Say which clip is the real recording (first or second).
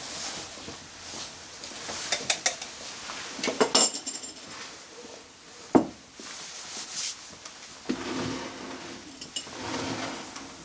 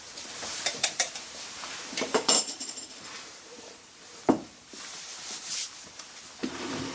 first